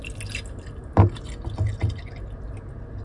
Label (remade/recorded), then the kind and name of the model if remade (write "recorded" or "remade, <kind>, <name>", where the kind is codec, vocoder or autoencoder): recorded